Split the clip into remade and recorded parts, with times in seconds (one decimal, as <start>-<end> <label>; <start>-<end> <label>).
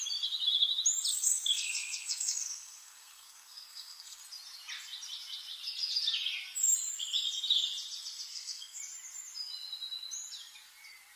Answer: 0.0-1.1 recorded; 1.1-4.2 remade; 4.2-8.3 recorded; 8.3-8.8 remade; 8.8-11.2 recorded